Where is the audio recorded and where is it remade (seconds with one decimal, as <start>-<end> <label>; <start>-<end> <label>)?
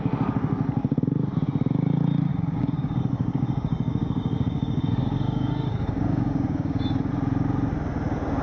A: 0.0-2.3 recorded; 2.3-7.1 remade; 7.1-8.4 recorded